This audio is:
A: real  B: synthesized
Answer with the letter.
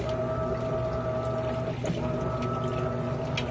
A